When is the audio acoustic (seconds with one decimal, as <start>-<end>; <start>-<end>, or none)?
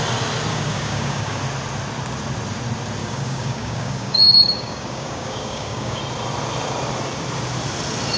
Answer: 0.0-0.5; 1.4-3.0; 6.0-8.2